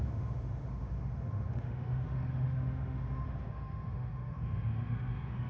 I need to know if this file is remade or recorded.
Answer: remade